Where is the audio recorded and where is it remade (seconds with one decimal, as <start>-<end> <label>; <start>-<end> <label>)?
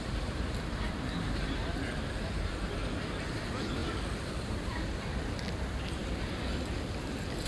0.0-2.8 remade; 2.8-3.4 recorded; 3.4-7.5 remade